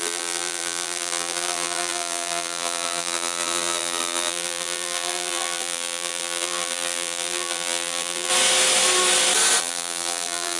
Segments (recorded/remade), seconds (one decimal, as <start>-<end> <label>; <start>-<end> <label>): 0.0-8.3 remade; 8.3-9.6 recorded; 9.6-10.6 remade